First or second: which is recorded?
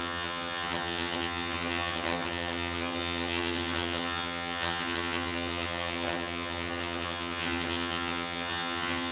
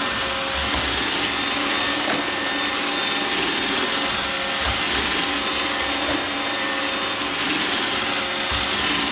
second